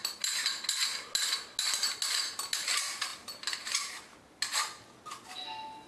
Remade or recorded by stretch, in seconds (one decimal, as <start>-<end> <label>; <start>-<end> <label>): 0.0-5.9 recorded